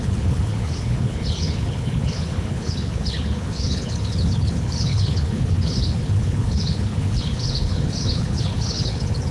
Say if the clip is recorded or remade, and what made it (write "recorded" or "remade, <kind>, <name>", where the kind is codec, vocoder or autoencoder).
remade, codec, HILCodec